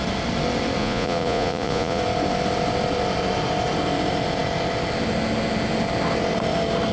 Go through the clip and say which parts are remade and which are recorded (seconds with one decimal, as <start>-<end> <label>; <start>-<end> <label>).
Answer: 0.0-0.8 recorded; 0.8-2.0 remade; 2.0-6.9 recorded